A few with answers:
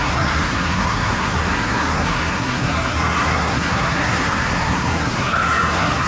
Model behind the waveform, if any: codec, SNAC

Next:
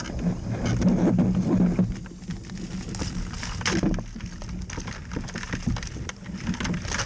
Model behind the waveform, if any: none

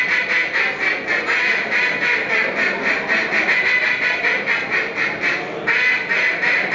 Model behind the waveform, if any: none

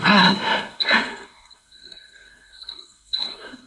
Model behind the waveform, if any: codec, SNAC